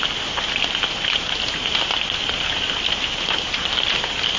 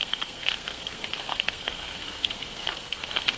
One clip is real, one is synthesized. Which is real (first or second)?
first